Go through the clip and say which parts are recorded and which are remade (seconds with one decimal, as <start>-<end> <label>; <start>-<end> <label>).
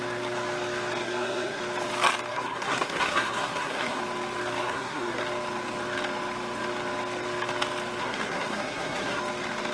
0.0-1.0 recorded; 1.0-1.6 remade; 1.6-2.3 recorded; 2.3-4.0 remade; 4.0-4.6 recorded; 4.6-5.2 remade; 5.2-8.0 recorded; 8.0-9.2 remade; 9.2-9.7 recorded